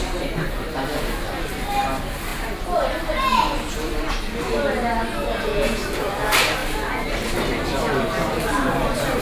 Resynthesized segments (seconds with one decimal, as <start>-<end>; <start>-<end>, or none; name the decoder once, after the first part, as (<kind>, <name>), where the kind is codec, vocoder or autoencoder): 5.2-5.8 (vocoder, Vocos)